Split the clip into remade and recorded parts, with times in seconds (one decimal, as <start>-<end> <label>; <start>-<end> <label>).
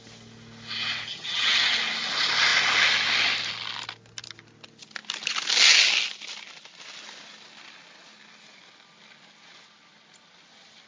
0.0-1.1 recorded; 1.1-1.8 remade; 1.8-10.9 recorded